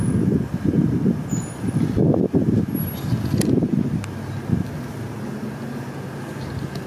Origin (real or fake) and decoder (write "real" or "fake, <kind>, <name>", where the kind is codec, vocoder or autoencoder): real